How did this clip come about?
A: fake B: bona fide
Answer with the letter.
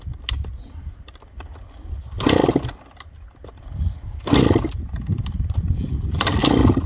B